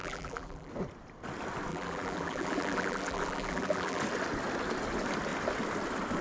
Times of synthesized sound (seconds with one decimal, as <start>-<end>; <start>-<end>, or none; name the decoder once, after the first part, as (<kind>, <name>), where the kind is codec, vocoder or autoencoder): 0.0-0.7 (vocoder, BigVGAN v2); 1.7-4.0